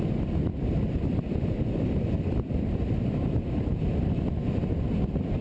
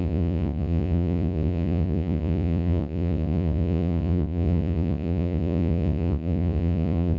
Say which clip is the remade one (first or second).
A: second